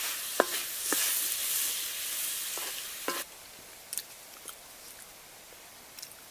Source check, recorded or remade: recorded